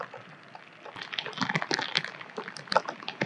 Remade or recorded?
recorded